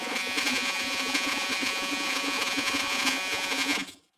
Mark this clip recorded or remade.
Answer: remade